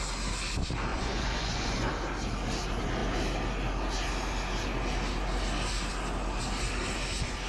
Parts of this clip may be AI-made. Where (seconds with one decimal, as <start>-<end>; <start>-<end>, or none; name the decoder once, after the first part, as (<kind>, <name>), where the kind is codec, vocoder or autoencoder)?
0.9-1.9 (vocoder, Vocos)